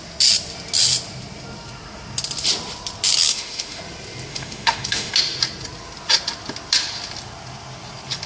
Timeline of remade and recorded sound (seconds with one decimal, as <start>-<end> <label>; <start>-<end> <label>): 0.0-3.3 recorded; 3.3-3.8 remade; 3.8-4.3 recorded; 4.3-5.1 remade; 5.1-8.3 recorded

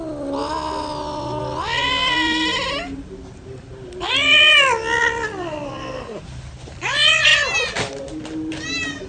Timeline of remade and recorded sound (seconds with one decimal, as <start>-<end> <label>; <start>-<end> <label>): 0.0-9.1 recorded

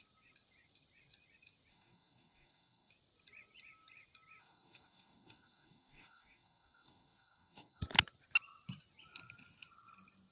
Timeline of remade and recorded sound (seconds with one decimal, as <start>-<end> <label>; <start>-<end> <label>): 0.0-1.7 recorded; 1.7-2.9 remade; 2.9-4.4 recorded; 4.4-7.8 remade; 7.8-10.3 recorded

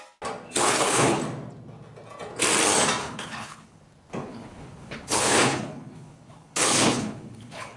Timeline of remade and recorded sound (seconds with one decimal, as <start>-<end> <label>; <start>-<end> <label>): 0.0-0.6 recorded; 0.6-1.2 remade; 1.2-3.0 recorded; 3.0-3.8 remade; 3.8-4.2 recorded; 4.2-7.8 remade

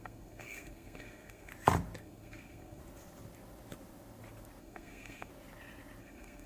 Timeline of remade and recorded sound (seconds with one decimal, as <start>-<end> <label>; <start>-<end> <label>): 0.0-1.5 remade; 1.5-2.0 recorded; 2.0-2.8 remade; 2.8-4.6 recorded; 4.6-5.3 remade; 5.3-6.0 recorded; 6.0-6.5 remade

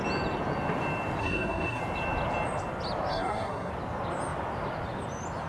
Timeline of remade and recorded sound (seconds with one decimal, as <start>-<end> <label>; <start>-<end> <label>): 0.0-1.2 recorded; 1.2-1.8 remade; 1.8-3.1 recorded; 3.1-3.7 remade; 3.7-5.5 recorded

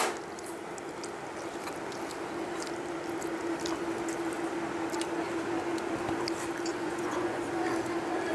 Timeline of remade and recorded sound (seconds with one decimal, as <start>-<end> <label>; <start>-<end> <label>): 0.0-6.7 recorded; 6.7-7.4 remade; 7.4-8.3 recorded

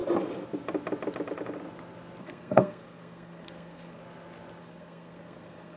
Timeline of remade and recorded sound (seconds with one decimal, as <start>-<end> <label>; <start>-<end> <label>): 0.0-2.2 recorded; 2.2-4.0 remade; 4.0-4.6 recorded; 4.6-5.8 remade